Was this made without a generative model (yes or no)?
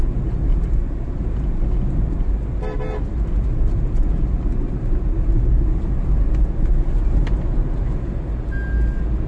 yes